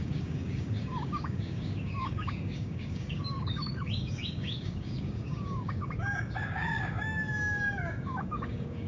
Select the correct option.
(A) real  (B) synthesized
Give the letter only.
B